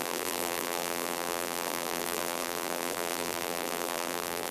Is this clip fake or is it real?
fake